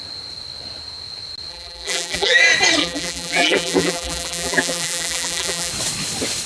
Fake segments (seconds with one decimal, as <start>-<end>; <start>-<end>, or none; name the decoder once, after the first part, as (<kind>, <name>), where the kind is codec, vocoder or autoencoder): 1.5-2.4 (vocoder, BigVGAN v2); 2.8-5.7